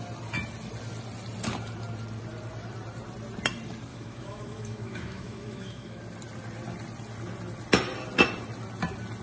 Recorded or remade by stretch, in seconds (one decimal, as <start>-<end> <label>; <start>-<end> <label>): 0.0-3.9 recorded; 3.9-6.0 remade; 6.0-9.2 recorded